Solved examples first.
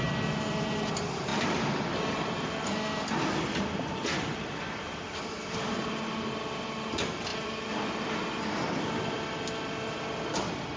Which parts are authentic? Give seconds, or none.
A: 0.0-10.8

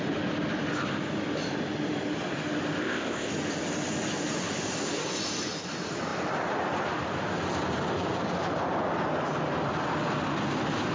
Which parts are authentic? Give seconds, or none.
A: 0.0-2.8; 3.3-10.9

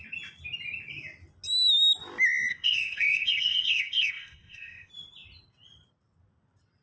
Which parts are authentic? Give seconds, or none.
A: 0.0-2.5; 4.9-6.8

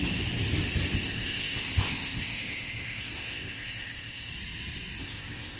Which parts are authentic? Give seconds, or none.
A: 0.0-0.9; 4.3-5.0

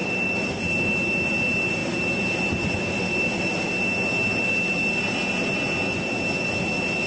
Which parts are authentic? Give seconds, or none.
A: 0.0-7.1

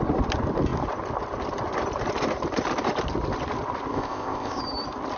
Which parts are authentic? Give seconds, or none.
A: 0.0-3.9; 4.6-5.2